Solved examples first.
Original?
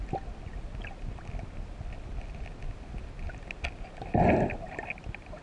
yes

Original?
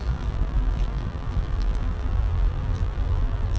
no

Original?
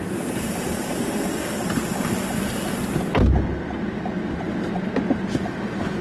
yes